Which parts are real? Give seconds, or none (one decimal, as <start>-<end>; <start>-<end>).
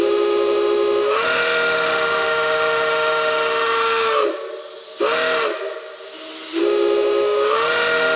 4.3-5.0; 5.5-6.6